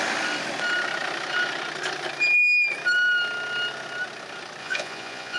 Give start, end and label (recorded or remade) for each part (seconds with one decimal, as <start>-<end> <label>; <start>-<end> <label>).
0.0-4.6 recorded; 4.6-5.4 remade